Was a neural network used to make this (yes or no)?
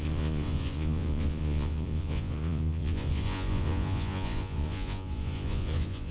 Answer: yes